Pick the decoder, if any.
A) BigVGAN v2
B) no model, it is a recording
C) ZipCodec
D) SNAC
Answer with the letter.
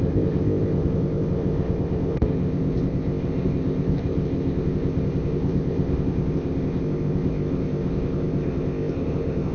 C